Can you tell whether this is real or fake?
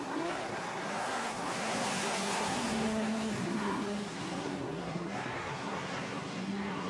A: fake